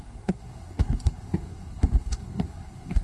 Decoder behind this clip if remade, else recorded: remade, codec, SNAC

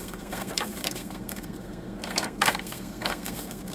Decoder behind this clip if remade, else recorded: remade, codec, SNAC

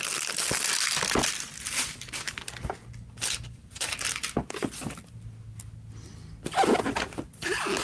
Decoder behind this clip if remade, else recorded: recorded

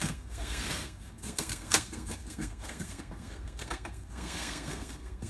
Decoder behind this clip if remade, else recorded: remade, codec, SNAC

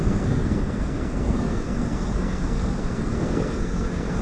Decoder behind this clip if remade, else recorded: remade, codec, SNAC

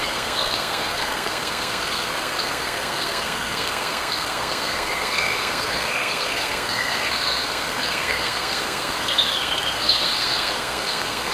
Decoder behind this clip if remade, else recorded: remade, codec, SNAC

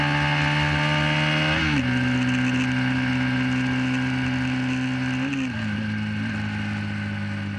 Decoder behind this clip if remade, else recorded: recorded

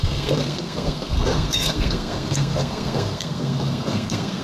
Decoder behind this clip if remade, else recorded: remade, codec, SNAC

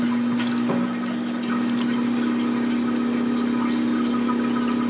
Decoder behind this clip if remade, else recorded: recorded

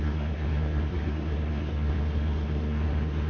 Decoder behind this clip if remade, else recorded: remade, codec, SNAC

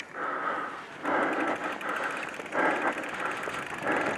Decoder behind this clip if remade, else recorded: recorded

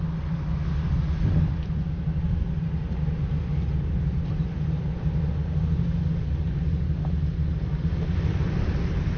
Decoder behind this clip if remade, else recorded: recorded